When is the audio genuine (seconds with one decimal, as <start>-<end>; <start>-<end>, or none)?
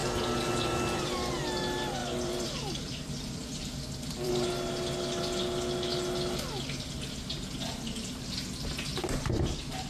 0.0-2.0; 4.3-9.9